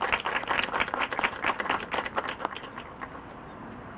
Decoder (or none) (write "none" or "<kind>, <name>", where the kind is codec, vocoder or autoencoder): none